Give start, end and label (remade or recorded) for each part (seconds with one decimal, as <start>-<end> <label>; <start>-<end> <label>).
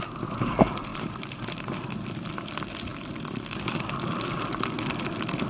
0.0-5.5 recorded